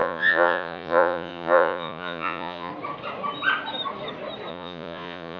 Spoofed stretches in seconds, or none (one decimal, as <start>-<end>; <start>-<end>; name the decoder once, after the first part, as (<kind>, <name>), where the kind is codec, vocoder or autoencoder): 0.0-2.7 (vocoder, Vocos); 4.5-5.4